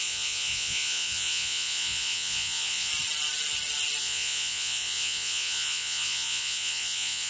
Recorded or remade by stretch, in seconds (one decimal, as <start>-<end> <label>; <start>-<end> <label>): 0.0-2.9 remade; 2.9-4.0 recorded; 4.0-7.3 remade